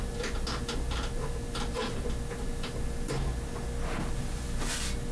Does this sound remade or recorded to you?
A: recorded